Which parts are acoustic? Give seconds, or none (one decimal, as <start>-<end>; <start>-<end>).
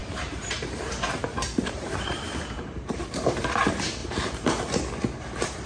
3.4-4.0; 4.5-5.7